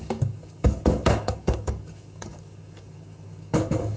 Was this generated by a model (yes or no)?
yes